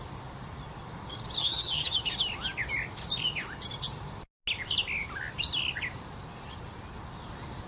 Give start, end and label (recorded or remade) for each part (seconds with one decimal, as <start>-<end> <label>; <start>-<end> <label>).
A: 0.0-1.4 recorded; 1.4-2.0 remade; 2.0-7.7 recorded